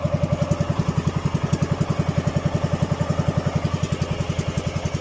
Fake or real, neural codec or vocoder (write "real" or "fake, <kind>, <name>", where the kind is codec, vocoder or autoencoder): real